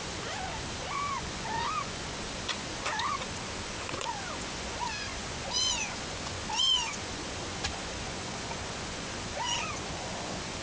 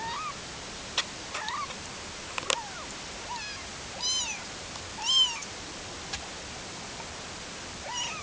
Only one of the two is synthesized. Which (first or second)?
first